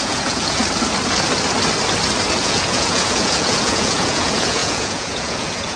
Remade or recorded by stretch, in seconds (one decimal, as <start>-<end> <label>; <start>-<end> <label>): 0.0-0.6 remade; 0.6-2.4 recorded; 2.4-5.8 remade

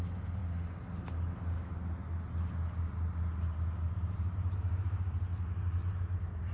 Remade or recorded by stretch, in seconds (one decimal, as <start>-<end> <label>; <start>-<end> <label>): 0.0-0.4 remade; 0.4-4.1 recorded; 4.1-5.3 remade; 5.3-6.0 recorded; 6.0-6.5 remade